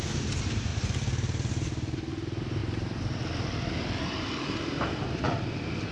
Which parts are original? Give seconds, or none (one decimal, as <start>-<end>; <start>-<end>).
0.0-0.7; 1.5-2.6; 5.4-5.9